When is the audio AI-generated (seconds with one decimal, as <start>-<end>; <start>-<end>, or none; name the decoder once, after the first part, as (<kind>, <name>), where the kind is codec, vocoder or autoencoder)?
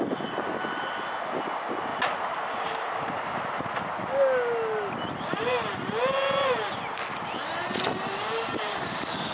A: 1.9-3.8 (vocoder, BigVGAN v2)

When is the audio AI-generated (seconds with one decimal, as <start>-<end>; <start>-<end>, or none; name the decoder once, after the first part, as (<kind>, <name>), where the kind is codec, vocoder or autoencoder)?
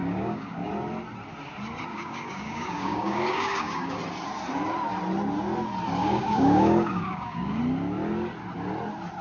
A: 0.0-0.7 (codec, DAC); 1.9-4.0; 6.0-7.6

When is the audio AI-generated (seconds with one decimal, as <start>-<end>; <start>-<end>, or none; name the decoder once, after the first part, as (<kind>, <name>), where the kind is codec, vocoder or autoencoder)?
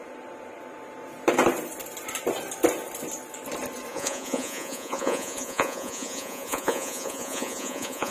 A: 3.9-8.1 (vocoder, Vocos)